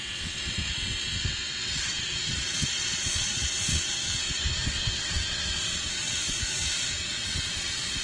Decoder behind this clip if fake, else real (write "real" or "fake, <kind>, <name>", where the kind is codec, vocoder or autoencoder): fake, vocoder, WaveNeXt